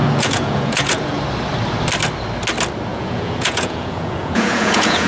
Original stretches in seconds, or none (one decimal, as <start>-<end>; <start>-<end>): 1.2-2.9